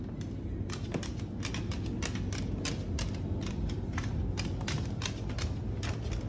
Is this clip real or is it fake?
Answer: real